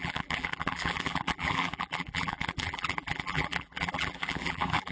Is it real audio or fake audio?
fake